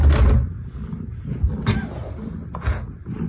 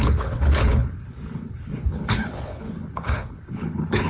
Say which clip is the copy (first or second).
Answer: second